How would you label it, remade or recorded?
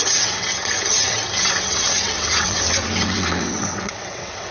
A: remade